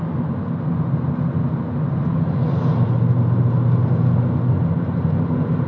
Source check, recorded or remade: recorded